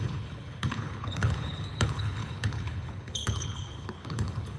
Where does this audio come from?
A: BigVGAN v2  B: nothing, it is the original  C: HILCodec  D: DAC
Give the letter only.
C